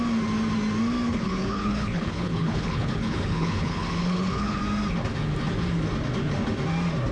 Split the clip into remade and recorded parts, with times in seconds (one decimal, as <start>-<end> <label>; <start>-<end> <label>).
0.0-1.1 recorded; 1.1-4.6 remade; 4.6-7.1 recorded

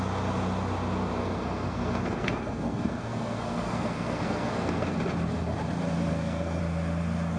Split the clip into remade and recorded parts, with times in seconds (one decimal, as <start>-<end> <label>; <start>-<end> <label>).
0.0-1.2 recorded; 1.2-5.0 remade; 5.0-6.1 recorded; 6.1-6.6 remade; 6.6-7.4 recorded

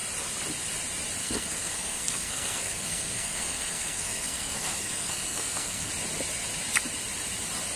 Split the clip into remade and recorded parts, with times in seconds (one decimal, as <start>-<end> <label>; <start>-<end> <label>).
0.0-1.2 recorded; 1.2-5.9 remade; 5.9-7.8 recorded